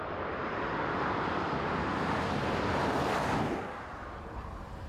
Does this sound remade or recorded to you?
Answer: recorded